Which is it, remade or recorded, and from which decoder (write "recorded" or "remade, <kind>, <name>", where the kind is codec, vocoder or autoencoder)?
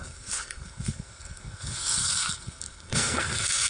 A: remade, codec, SNAC